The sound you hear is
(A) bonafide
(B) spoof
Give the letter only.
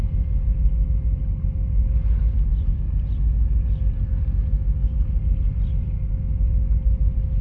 A